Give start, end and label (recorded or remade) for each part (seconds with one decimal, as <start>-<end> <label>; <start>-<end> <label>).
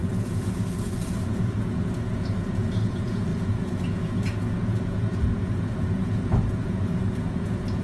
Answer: 0.0-7.8 remade